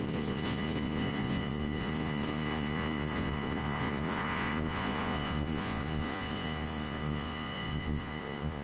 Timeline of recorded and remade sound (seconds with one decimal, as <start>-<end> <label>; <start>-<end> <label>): 0.0-8.6 remade